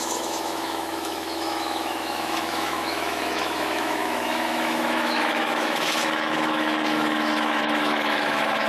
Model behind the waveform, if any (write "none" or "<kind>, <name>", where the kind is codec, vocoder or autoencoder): autoencoder, DAC-VAE